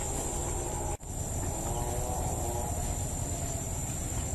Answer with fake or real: real